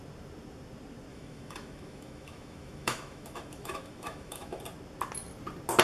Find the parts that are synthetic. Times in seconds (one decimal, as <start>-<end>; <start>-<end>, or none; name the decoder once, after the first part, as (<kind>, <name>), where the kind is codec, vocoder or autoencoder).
1.1-4.6 (autoencoder, DAC-VAE)